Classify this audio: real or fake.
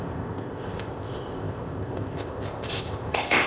fake